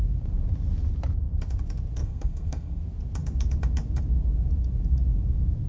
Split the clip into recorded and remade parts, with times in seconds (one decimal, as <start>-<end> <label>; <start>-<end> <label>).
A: 0.0-2.0 recorded; 2.0-2.8 remade; 2.8-5.7 recorded